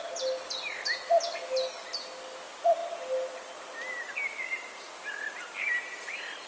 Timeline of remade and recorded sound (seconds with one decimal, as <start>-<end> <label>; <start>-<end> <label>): 0.0-6.5 recorded